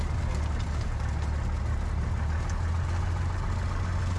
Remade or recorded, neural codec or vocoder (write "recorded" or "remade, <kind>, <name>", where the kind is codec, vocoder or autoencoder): recorded